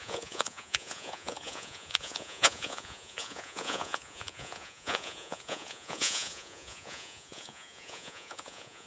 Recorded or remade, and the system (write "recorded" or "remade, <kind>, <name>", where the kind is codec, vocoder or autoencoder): remade, vocoder, Vocos